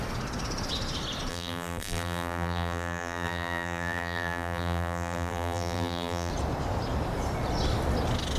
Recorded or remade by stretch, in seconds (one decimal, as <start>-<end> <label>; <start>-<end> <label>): 0.0-1.3 recorded; 1.3-6.3 remade; 6.3-8.4 recorded